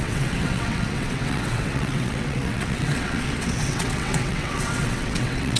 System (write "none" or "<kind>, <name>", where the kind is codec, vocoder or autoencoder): vocoder, WaveNeXt